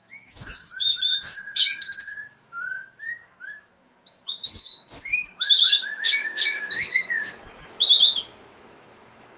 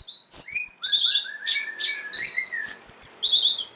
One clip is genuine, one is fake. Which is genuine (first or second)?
second